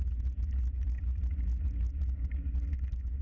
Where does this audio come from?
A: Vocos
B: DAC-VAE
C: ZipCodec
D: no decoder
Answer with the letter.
D